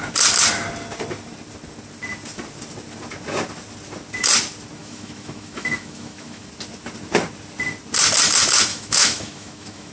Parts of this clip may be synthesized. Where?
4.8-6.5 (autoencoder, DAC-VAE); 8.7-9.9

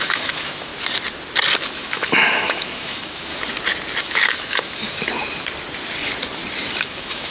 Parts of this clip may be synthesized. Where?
0.0-0.7 (autoencoder, DAC-VAE); 1.7-3.3; 4.0-4.8; 6.8-7.3

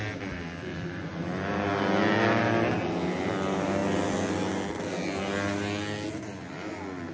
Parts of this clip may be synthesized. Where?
none

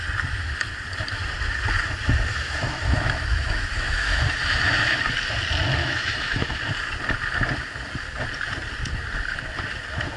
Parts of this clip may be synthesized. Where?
2.3-4.2 (autoencoder, DAC-VAE); 5.8-6.6